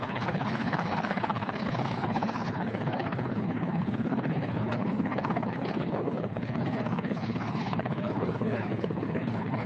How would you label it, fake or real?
fake